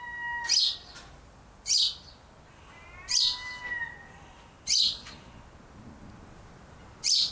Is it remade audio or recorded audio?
recorded